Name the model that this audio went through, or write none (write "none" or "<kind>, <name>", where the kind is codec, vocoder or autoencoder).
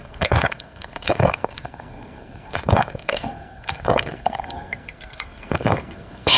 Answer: codec, SNAC